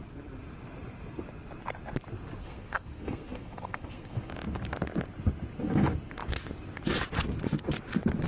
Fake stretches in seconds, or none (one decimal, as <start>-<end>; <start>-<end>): 2.4-4.3